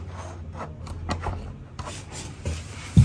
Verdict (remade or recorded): recorded